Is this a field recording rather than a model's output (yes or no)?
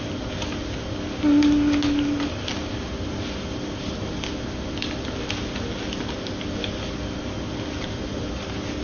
yes